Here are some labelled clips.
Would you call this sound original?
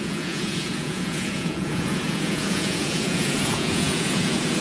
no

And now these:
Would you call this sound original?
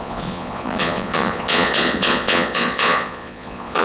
no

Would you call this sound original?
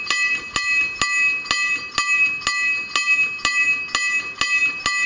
yes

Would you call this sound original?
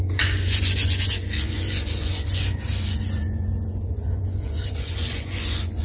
no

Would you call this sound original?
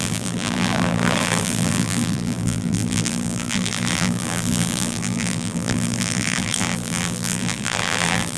no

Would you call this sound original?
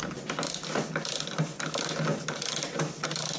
yes